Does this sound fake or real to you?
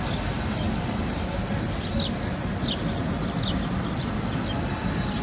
real